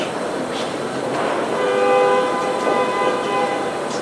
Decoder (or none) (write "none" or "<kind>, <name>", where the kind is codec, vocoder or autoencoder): vocoder, BigVGAN v2